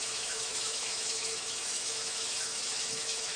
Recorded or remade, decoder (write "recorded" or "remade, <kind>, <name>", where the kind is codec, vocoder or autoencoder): remade, autoencoder, DAC-VAE